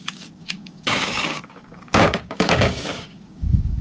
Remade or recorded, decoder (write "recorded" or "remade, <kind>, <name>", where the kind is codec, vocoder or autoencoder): remade, codec, DAC